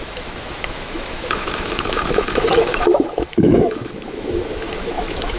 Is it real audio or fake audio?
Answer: fake